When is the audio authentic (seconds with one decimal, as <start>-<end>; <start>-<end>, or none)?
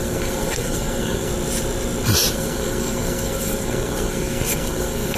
1.3-2.3